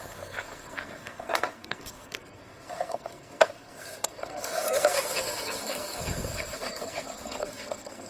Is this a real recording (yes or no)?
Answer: no